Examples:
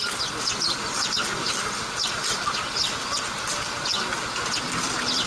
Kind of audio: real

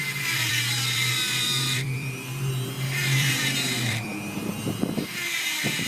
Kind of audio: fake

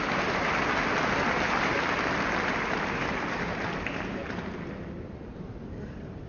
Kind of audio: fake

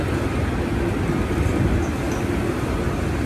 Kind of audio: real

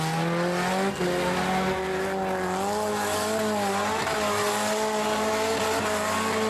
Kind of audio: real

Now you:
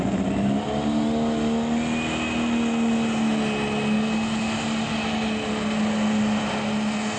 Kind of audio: real